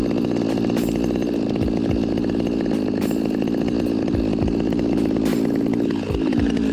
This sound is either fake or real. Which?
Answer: real